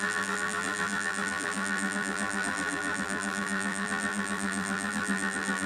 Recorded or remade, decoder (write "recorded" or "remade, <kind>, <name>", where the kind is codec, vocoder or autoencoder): remade, vocoder, BigVGAN v2